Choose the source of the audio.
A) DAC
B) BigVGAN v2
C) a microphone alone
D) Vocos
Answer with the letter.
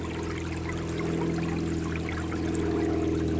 C